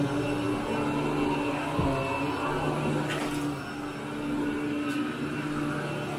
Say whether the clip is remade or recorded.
recorded